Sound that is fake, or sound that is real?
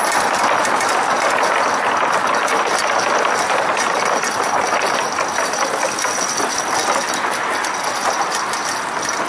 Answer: real